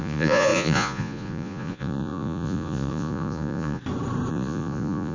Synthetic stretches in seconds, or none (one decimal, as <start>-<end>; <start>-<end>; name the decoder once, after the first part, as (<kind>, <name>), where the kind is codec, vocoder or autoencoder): 0.0-3.8 (vocoder, Vocos); 4.3-5.1